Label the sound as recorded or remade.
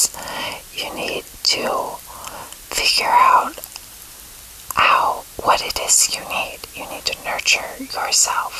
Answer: recorded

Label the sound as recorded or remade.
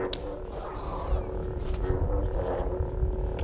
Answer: recorded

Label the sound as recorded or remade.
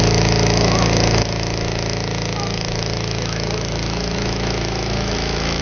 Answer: remade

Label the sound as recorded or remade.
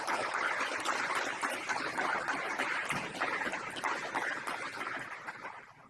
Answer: recorded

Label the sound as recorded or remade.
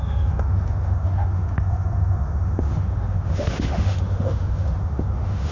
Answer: remade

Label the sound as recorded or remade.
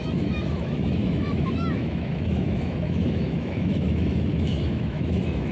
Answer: remade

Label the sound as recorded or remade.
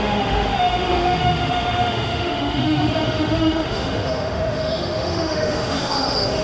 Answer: remade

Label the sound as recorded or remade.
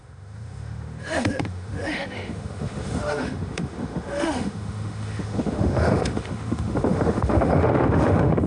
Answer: remade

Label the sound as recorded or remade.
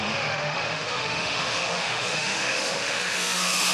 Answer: remade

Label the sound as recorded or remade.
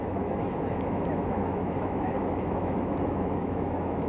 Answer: remade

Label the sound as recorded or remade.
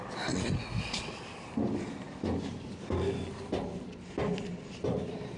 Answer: recorded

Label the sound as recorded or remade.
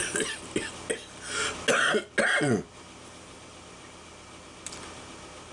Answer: recorded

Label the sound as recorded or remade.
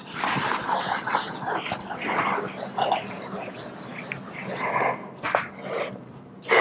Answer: recorded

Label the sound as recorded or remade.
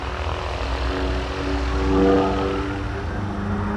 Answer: recorded